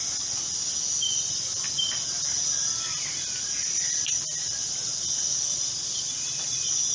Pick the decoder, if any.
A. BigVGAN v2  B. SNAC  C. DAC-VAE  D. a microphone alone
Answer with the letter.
D